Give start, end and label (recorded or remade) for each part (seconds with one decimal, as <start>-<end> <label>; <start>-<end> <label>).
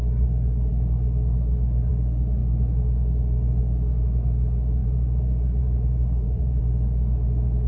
0.0-4.8 recorded; 4.8-6.6 remade; 6.6-7.7 recorded